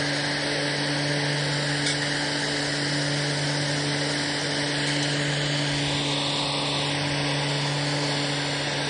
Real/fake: real